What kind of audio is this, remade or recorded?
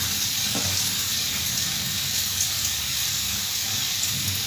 remade